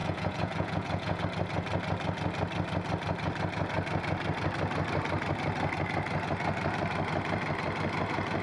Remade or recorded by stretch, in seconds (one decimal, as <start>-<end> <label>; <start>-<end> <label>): 0.0-1.2 remade; 1.2-8.4 recorded